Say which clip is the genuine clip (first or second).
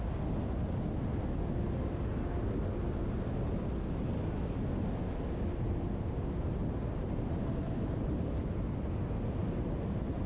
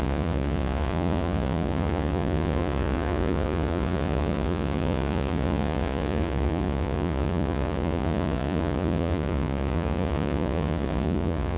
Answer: first